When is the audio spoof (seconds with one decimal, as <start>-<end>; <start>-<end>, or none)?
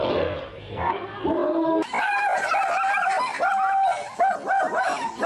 0.5-1.2